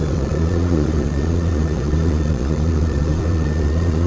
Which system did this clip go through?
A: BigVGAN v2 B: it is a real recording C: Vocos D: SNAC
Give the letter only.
C